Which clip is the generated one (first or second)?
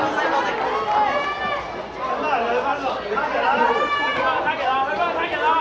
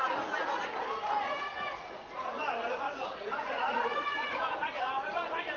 second